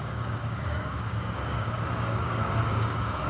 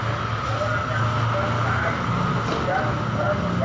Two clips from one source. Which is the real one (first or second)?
second